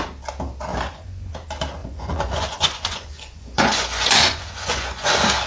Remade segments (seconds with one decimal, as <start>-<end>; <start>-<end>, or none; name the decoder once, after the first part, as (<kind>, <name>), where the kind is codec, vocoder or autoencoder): 0.7-1.3 (vocoder, Vocos); 1.8-5.1